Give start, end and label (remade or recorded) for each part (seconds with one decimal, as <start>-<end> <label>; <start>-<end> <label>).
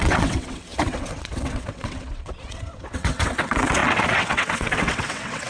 0.0-5.5 remade